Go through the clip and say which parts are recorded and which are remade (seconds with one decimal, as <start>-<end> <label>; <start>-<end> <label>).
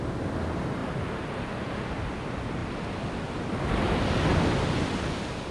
0.0-5.5 recorded